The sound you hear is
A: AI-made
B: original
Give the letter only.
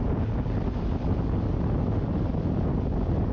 B